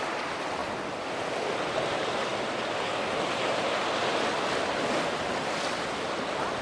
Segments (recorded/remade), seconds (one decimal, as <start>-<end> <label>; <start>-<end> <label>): 0.0-6.6 recorded

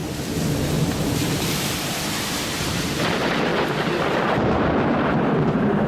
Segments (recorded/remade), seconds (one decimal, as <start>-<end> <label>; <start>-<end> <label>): 0.0-0.6 recorded; 0.6-3.5 remade; 3.5-4.4 recorded; 4.4-5.9 remade

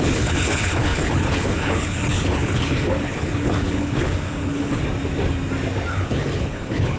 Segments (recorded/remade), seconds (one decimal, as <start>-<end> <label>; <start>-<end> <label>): 0.0-4.8 remade; 4.8-5.9 recorded; 5.9-7.0 remade

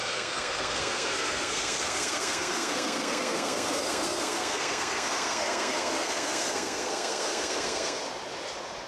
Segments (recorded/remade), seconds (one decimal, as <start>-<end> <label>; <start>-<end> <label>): 0.0-8.0 remade; 8.0-8.9 recorded

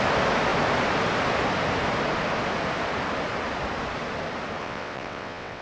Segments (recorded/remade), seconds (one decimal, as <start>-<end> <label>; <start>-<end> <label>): 0.0-4.6 recorded; 4.6-5.6 remade